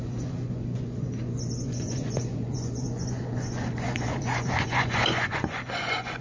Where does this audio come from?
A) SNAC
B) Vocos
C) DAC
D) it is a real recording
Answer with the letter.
B